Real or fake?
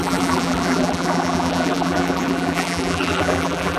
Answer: fake